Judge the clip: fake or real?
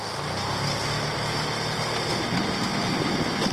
real